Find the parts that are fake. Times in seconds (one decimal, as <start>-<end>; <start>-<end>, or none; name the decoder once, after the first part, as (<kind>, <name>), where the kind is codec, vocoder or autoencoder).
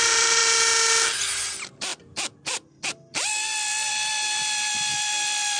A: 0.0-0.4 (vocoder, BigVGAN v2); 1.2-5.6